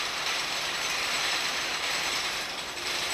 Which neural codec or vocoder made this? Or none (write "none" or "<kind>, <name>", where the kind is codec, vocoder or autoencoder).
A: vocoder, BigVGAN v2